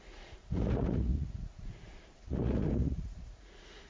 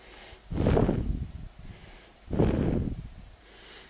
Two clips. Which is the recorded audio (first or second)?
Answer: second